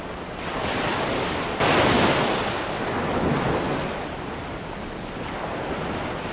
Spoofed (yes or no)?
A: no